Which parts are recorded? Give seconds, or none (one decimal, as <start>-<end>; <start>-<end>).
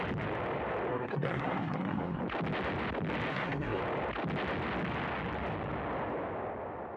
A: 0.0-0.9; 2.2-3.3; 3.8-7.0